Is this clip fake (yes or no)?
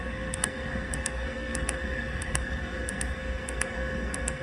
yes